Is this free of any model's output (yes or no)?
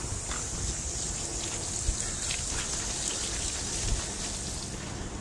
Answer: yes